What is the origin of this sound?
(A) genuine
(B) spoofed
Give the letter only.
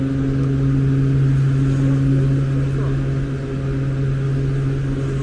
A